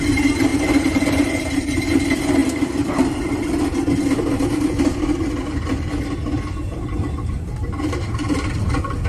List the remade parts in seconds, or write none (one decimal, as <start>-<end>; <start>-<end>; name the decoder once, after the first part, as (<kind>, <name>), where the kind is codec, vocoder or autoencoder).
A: 0.5-1.9 (vocoder, BigVGAN v2); 6.6-8.7